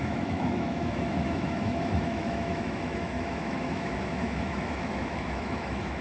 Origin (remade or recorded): remade